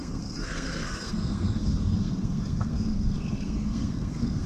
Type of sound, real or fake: fake